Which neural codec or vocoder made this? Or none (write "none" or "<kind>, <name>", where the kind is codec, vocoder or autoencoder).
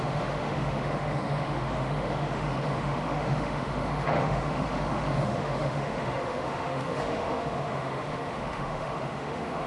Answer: autoencoder, DAC-VAE